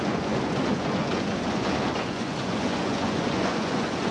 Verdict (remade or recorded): remade